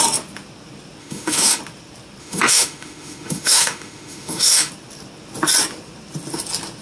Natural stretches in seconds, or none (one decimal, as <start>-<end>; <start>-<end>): 0.0-1.0; 1.6-2.2; 4.7-6.8